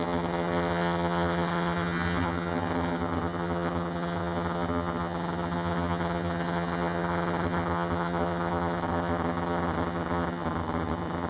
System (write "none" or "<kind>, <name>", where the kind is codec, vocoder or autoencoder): vocoder, HiFi-GAN